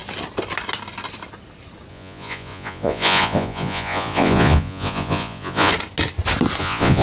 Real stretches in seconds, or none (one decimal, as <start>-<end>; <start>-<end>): 0.0-1.9; 5.7-6.6